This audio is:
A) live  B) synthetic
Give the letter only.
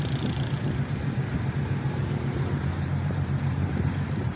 B